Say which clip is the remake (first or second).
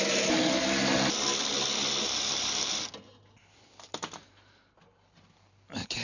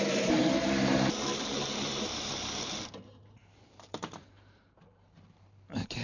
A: second